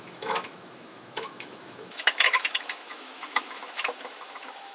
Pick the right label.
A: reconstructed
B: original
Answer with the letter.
A